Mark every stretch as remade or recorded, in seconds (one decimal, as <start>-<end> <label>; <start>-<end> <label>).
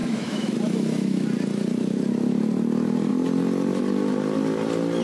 0.0-1.3 remade; 1.3-5.0 recorded